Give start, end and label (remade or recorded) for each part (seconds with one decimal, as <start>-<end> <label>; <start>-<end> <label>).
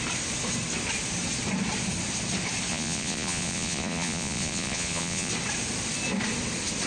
0.0-2.7 recorded; 2.7-5.3 remade; 5.3-6.9 recorded